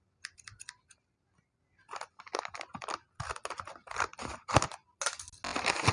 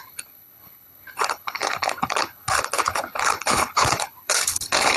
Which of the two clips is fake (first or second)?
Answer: second